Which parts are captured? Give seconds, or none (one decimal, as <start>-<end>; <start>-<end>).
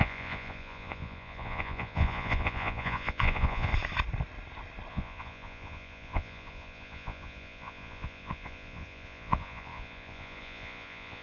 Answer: 3.7-4.9